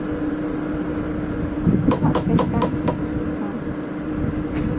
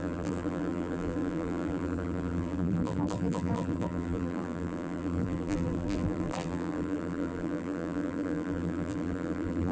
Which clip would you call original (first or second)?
first